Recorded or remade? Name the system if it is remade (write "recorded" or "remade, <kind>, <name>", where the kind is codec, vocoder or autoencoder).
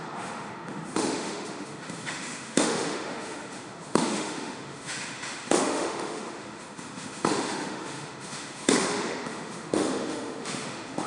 remade, autoencoder, DAC-VAE